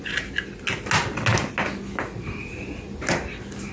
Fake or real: real